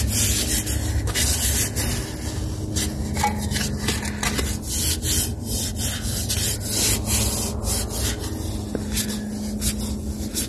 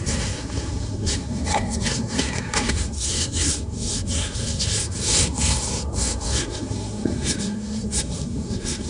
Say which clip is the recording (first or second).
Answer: first